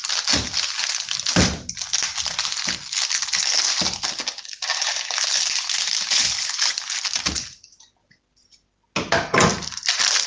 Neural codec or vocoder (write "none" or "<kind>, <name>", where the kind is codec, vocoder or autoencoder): none